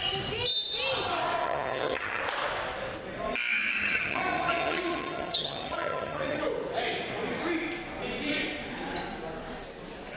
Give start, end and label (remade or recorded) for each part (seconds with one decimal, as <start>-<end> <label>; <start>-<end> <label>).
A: 0.0-1.4 recorded; 1.4-2.2 remade; 2.2-3.8 recorded; 3.8-6.4 remade; 6.4-10.2 recorded